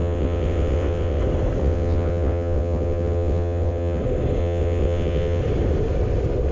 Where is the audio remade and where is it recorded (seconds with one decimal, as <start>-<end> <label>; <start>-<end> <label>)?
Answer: 0.0-1.2 remade; 1.2-1.6 recorded; 1.6-4.0 remade; 4.0-4.4 recorded; 4.4-5.4 remade; 5.4-6.5 recorded